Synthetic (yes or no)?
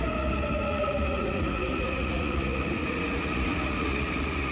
yes